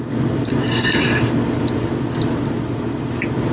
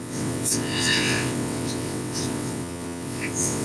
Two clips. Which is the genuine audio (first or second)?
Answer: first